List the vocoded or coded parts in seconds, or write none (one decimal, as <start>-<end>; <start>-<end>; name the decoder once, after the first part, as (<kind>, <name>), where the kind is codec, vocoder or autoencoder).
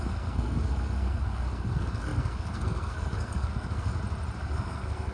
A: 0.0-3.9 (codec, SNAC); 4.4-5.1